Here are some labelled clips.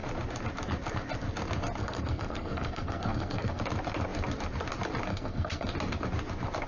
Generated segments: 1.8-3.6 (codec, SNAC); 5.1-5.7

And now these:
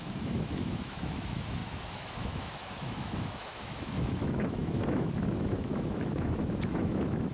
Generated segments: 0.0-7.3 (autoencoder, DAC-VAE)